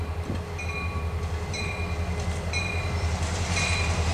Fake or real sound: real